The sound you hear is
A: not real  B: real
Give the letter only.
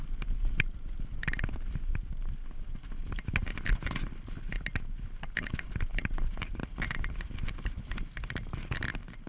B